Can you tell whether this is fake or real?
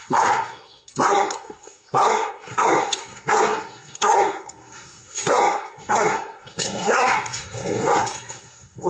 fake